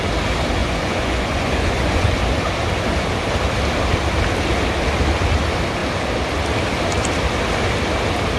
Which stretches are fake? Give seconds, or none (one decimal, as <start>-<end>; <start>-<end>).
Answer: 0.6-2.1